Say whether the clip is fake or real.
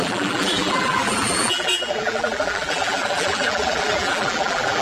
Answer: fake